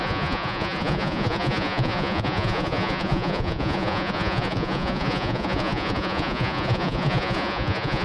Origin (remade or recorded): remade